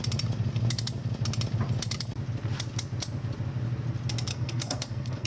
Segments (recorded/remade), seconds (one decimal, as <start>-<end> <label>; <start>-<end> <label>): 0.0-4.3 recorded; 4.3-5.3 remade